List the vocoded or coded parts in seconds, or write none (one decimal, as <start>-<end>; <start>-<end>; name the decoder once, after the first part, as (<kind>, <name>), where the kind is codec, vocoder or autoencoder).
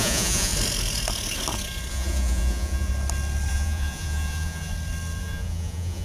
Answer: 0.0-0.5 (vocoder, Vocos); 1.9-2.9; 3.5-4.7; 5.2-6.0